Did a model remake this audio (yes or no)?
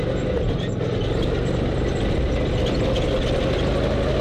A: no